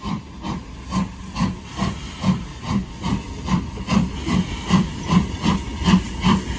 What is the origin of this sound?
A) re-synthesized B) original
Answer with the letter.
B